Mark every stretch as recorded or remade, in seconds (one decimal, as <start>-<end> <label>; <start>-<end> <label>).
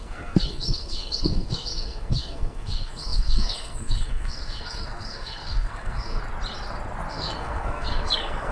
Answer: 0.0-6.2 remade; 6.2-7.1 recorded; 7.1-8.5 remade